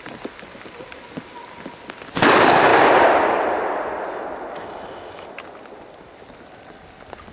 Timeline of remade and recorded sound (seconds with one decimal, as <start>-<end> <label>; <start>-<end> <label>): 0.0-7.3 recorded